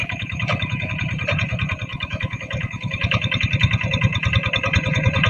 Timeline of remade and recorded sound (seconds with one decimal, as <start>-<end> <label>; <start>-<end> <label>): 0.0-0.9 remade; 0.9-1.9 recorded; 1.9-3.4 remade; 3.4-5.3 recorded